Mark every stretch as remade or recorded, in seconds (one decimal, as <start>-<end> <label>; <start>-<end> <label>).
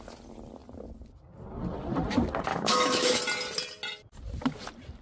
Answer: 0.0-2.5 recorded; 2.5-3.2 remade; 3.2-5.0 recorded